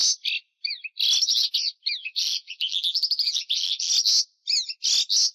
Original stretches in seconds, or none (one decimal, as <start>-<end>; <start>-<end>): 0.0-2.0; 3.9-5.3